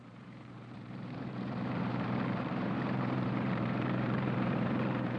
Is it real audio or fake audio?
fake